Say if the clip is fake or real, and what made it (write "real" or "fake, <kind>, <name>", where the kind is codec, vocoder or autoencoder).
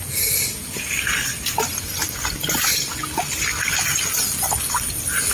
fake, vocoder, BigVGAN v2